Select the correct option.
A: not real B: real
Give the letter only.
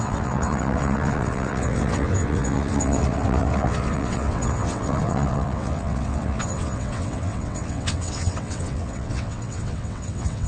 A